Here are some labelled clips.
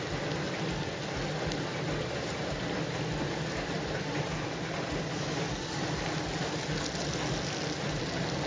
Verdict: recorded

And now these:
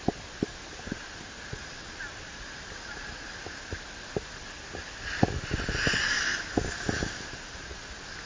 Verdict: recorded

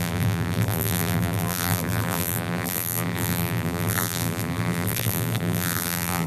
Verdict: remade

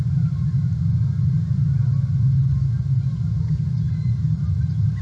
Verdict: recorded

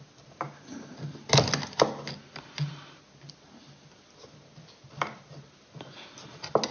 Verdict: recorded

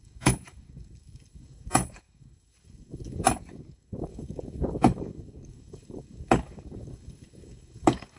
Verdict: remade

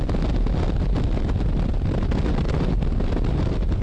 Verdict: remade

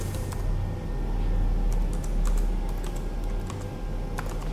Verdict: recorded